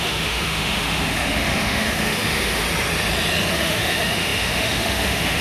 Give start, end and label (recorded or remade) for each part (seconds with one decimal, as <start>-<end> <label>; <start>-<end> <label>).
0.0-2.6 remade; 2.6-3.5 recorded; 3.5-5.4 remade